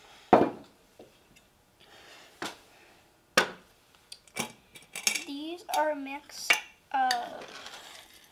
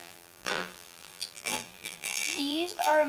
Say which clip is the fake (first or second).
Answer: second